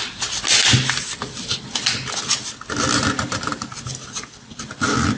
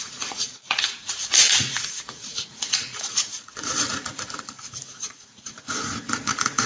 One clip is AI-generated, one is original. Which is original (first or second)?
first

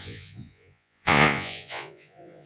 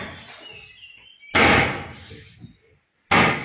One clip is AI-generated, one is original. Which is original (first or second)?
second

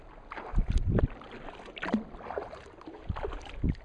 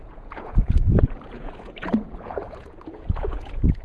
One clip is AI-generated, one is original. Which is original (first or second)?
first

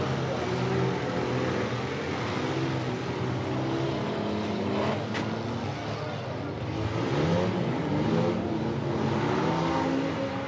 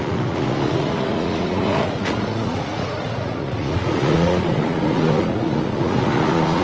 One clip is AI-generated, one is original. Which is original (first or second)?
first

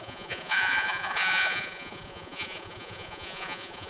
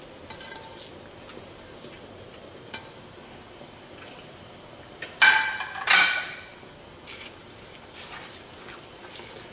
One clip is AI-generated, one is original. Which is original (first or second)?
second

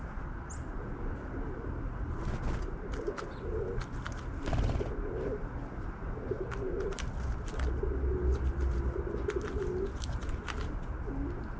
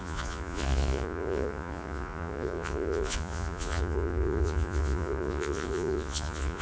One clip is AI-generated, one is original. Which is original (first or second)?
first